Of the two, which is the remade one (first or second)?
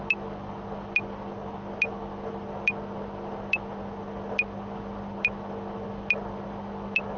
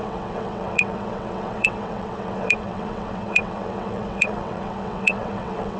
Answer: second